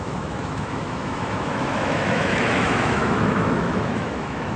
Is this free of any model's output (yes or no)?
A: no